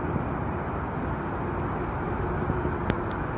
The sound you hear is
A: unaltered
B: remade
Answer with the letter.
A